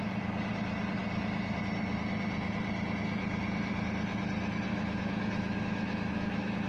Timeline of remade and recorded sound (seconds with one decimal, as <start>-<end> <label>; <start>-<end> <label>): 0.0-4.7 recorded; 4.7-6.7 remade